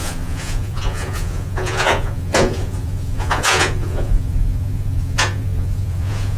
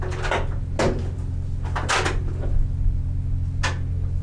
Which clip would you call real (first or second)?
second